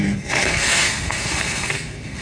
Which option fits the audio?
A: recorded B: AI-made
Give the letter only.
B